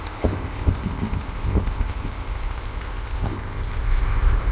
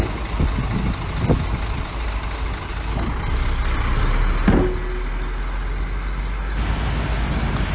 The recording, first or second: second